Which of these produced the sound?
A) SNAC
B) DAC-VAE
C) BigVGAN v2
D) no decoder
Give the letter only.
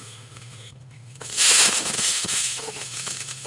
B